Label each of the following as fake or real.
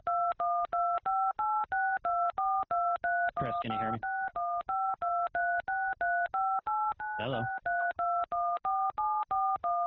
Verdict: real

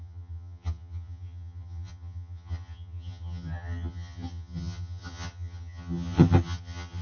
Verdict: fake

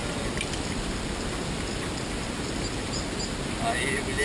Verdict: real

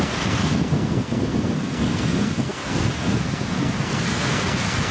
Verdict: fake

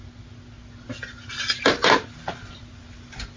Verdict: real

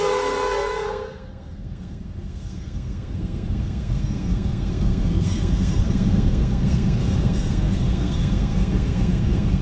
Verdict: fake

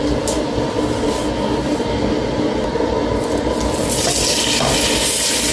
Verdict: real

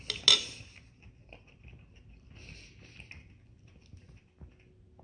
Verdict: real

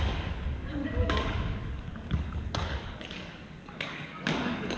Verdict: fake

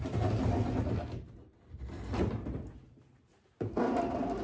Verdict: real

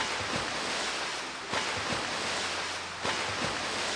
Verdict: real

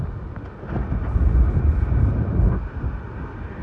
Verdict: real